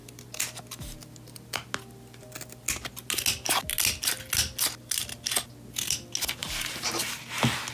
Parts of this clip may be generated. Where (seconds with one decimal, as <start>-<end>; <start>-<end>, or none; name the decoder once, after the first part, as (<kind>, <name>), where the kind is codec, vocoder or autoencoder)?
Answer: 6.4-7.2 (vocoder, BigVGAN v2)